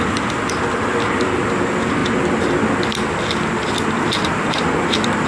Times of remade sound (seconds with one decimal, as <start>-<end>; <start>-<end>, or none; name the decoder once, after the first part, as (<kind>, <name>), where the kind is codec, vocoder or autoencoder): none